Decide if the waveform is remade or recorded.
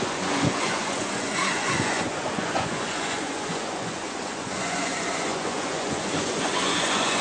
remade